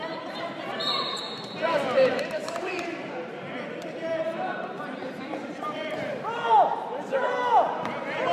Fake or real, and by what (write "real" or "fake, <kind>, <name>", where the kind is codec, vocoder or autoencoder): fake, vocoder, BigVGAN v2